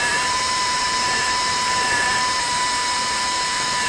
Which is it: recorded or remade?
remade